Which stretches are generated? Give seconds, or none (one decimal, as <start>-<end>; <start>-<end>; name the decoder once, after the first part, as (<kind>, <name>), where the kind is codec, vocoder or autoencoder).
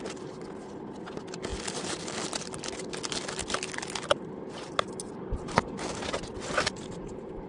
none